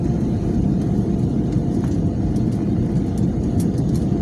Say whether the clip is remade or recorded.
recorded